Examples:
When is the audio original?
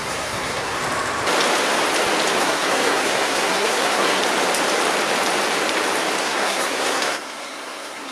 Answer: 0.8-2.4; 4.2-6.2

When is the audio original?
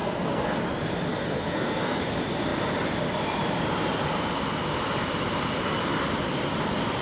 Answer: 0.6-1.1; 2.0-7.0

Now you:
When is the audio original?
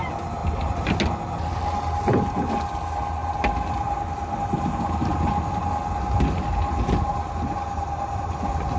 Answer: 0.0-8.8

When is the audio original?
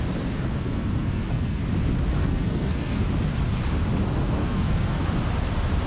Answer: 0.0-0.5; 1.6-2.2; 3.0-4.4; 5.0-5.9